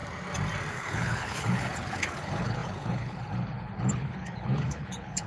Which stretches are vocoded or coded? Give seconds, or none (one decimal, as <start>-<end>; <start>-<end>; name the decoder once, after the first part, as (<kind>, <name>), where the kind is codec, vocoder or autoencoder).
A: 0.7-5.3 (codec, HILCodec)